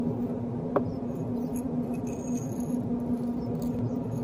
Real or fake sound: real